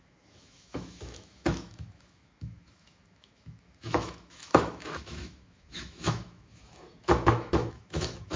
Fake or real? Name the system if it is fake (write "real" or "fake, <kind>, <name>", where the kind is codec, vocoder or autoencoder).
fake, autoencoder, DAC-VAE